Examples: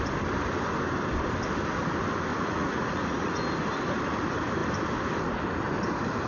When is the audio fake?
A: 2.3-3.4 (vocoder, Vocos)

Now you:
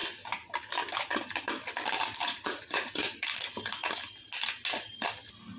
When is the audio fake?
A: 2.2-3.9 (vocoder, Vocos)

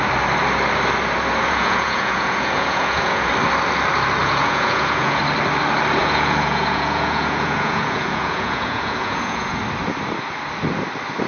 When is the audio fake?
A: 1.4-3.3 (vocoder, Vocos); 4.2-5.2; 6.0-9.6

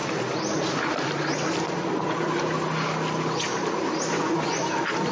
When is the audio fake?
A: 4.1-4.6 (vocoder, Vocos)

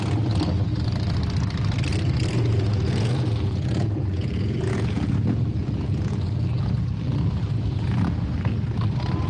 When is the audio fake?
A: 1.9-6.5 (vocoder, Vocos)